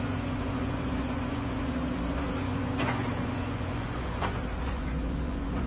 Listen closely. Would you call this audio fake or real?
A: fake